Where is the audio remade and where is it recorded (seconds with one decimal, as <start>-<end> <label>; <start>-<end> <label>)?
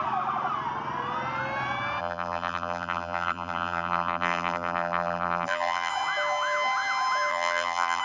0.0-2.0 recorded; 2.0-5.9 remade; 5.9-7.3 recorded; 7.3-8.0 remade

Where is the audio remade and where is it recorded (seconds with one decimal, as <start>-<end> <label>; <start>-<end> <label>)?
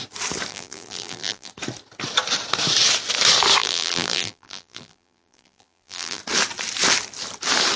0.0-0.5 recorded; 0.5-1.5 remade; 1.5-3.6 recorded; 3.6-6.2 remade; 6.2-7.8 recorded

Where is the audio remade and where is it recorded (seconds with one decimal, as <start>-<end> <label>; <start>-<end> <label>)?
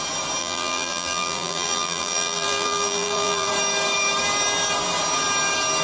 0.0-0.4 recorded; 0.4-3.5 remade; 3.5-5.8 recorded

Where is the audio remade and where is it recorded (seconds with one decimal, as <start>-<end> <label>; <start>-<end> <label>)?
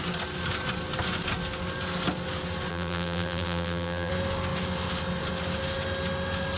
0.0-2.7 recorded; 2.7-4.1 remade; 4.1-6.6 recorded